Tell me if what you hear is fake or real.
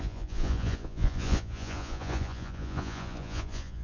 fake